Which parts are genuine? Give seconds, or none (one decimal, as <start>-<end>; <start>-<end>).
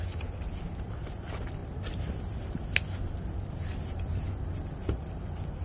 0.0-5.6